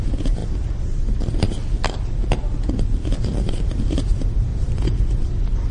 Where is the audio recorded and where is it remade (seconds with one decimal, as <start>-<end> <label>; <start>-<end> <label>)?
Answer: 0.0-0.4 recorded; 0.4-2.4 remade; 2.4-4.5 recorded; 4.5-5.7 remade